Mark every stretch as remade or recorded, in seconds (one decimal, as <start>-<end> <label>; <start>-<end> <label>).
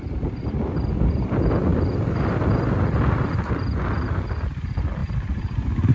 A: 0.0-5.9 recorded